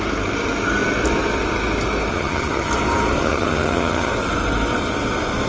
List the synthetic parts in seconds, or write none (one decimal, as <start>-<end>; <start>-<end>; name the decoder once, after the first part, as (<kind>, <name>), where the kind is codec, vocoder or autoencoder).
2.1-2.7 (vocoder, HiFi-GAN); 3.2-4.1